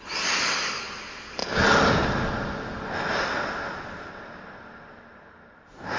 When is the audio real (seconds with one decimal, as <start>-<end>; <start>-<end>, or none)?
0.0-6.0